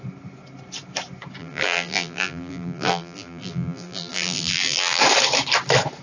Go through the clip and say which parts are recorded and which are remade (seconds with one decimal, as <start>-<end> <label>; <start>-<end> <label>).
0.0-1.4 recorded; 1.4-5.0 remade; 5.0-6.0 recorded